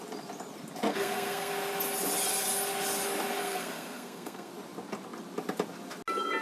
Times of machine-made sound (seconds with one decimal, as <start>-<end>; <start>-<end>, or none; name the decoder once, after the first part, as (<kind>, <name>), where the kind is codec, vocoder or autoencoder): 0.9-1.5 (codec, SNAC); 3.4-4.5